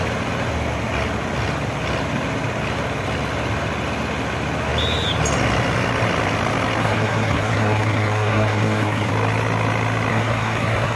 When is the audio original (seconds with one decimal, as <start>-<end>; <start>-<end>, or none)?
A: 0.0-6.8; 9.1-10.1